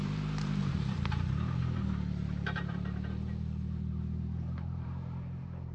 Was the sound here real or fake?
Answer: fake